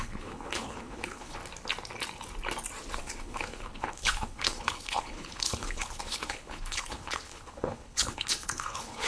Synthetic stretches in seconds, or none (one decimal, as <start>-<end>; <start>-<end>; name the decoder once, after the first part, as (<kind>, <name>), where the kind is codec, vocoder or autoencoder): 0.0-1.4 (codec, HILCodec); 3.0-9.1